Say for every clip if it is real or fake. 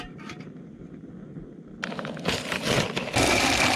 real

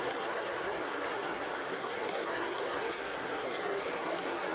fake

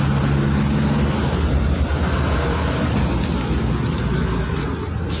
real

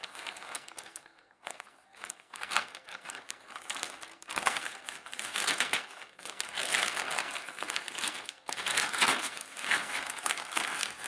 fake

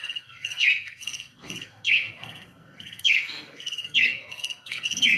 fake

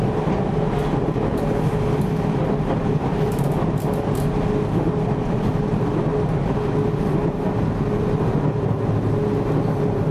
real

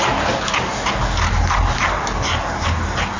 real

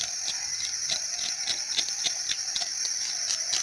real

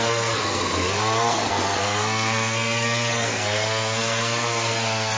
fake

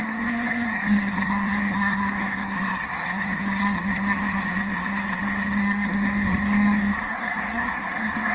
fake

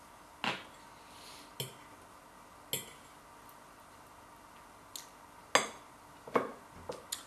real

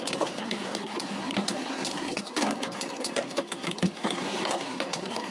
fake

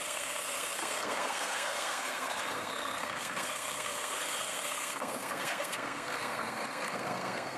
fake